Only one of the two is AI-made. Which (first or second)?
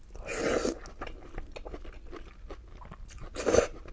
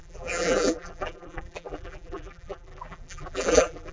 second